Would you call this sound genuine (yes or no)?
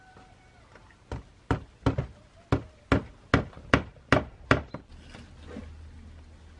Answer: yes